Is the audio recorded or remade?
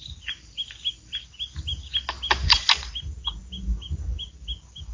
recorded